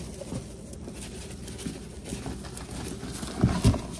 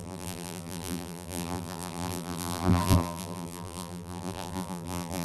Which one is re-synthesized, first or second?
second